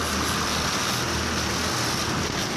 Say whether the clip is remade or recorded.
recorded